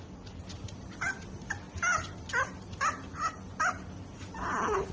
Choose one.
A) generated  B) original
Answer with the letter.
B